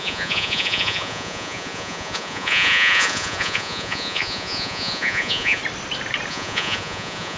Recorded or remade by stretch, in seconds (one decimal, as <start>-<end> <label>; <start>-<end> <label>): 0.0-5.6 remade; 5.6-6.3 recorded; 6.3-7.4 remade